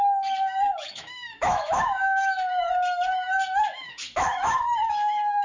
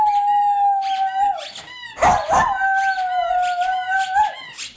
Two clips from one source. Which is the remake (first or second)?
first